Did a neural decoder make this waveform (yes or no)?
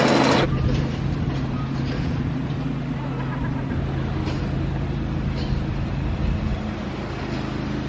no